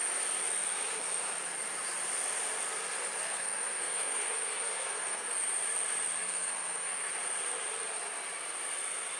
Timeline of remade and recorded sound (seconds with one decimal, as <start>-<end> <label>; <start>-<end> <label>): 0.0-3.2 recorded; 3.2-5.3 remade; 5.3-6.2 recorded; 6.2-7.1 remade; 7.1-9.2 recorded